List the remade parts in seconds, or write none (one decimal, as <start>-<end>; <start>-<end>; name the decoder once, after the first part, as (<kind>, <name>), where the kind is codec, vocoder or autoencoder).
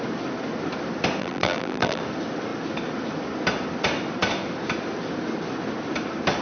1.2-2.0 (vocoder, BigVGAN v2)